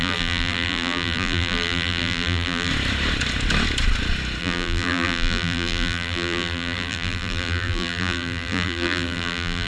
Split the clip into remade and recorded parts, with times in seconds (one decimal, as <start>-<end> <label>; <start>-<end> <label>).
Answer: 0.0-2.7 remade; 2.7-4.4 recorded; 4.4-9.7 remade